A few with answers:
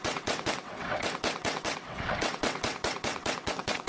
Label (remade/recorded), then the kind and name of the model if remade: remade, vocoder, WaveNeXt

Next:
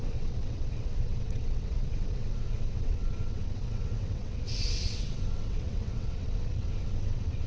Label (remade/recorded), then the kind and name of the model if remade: remade, vocoder, WaveNeXt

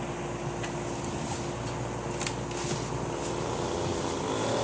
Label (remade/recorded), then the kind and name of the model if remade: recorded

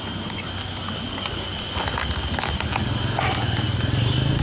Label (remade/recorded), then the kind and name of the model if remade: recorded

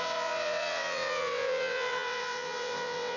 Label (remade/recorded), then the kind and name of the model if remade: remade, vocoder, WaveNeXt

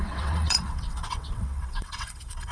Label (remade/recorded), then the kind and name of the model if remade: remade, vocoder, WaveNeXt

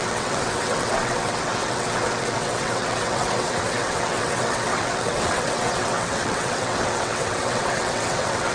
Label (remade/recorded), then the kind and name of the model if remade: remade, vocoder, WaveNeXt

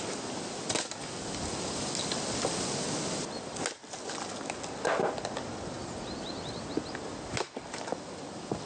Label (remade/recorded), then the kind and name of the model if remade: recorded